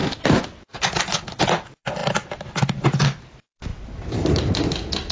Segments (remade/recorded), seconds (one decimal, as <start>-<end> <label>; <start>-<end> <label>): 0.0-5.1 recorded